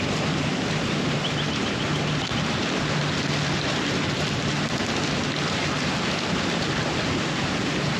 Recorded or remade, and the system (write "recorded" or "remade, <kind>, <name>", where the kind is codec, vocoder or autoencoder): recorded